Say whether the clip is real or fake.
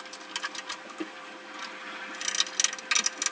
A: real